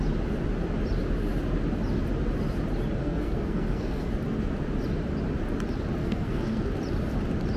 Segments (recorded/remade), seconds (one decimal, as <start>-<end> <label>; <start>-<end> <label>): 0.0-3.0 recorded; 3.0-4.1 remade; 4.1-6.0 recorded; 6.0-6.7 remade; 6.7-7.6 recorded